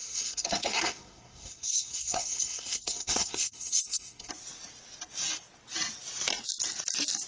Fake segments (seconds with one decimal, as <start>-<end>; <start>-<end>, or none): 0.0-4.3